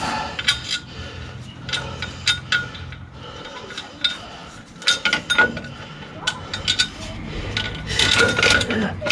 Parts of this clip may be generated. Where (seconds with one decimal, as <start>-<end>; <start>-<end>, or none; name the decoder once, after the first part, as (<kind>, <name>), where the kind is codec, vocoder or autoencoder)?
none